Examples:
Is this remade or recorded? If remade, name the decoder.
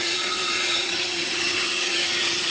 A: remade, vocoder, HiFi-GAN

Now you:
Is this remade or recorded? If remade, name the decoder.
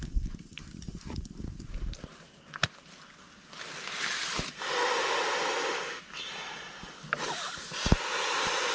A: recorded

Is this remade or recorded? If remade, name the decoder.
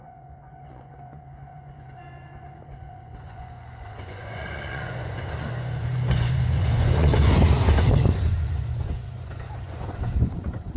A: remade, vocoder, Vocos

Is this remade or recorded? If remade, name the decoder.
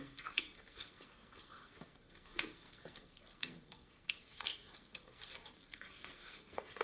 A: remade, codec, SNAC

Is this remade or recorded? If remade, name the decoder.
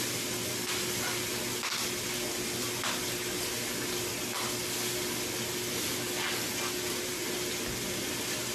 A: recorded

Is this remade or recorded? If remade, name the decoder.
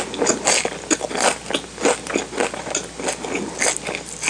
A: recorded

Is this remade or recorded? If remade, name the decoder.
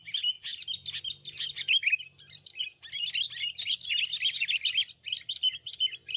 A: recorded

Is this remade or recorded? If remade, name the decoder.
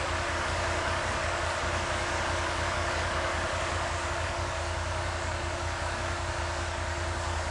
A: remade, codec, DAC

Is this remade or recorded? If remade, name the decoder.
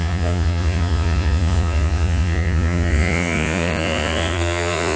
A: remade, vocoder, Vocos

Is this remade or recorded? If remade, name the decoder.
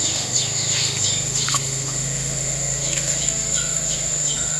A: remade, autoencoder, DAC-VAE